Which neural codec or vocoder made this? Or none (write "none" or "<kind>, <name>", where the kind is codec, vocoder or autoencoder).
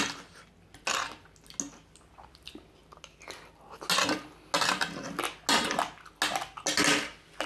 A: none